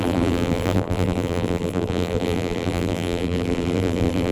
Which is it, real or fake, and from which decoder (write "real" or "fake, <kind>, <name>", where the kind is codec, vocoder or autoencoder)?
fake, vocoder, BigVGAN v2